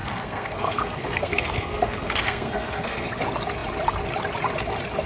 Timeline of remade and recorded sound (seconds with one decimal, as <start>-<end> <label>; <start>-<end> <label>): 0.0-3.1 remade; 3.1-5.1 recorded